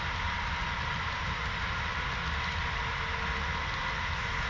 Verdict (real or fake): real